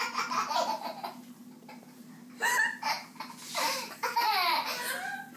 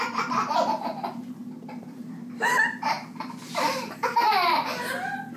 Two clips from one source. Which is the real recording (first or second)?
first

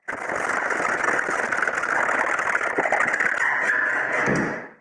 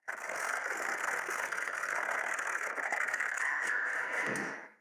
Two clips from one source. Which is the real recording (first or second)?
first